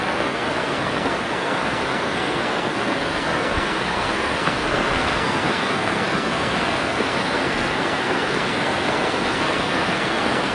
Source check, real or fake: fake